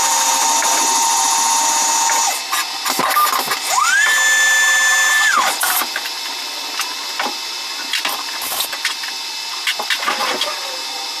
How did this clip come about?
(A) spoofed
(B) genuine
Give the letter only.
B